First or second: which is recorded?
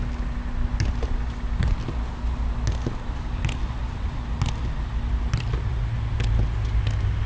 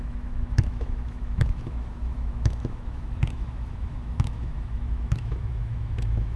first